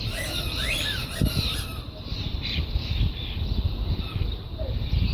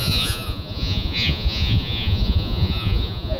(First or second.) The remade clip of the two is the second